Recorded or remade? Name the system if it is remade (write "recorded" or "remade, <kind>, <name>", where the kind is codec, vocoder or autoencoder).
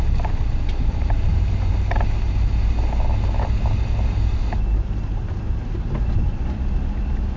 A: recorded